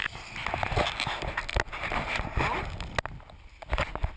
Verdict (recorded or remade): recorded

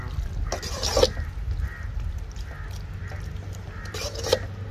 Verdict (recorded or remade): recorded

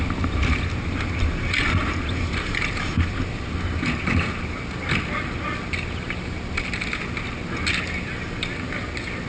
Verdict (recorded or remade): recorded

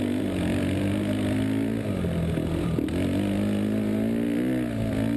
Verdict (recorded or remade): recorded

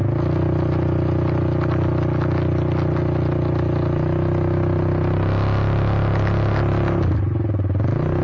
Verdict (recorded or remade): recorded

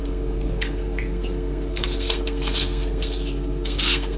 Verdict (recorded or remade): remade